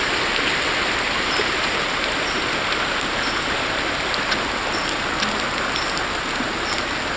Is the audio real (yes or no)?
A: yes